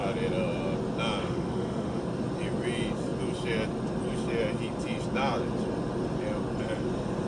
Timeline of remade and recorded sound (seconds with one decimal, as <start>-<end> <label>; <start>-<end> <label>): 0.0-1.2 recorded; 1.2-2.0 remade; 2.0-7.3 recorded